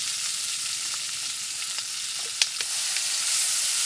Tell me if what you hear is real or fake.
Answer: real